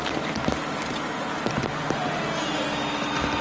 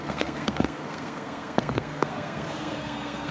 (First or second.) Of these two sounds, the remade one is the second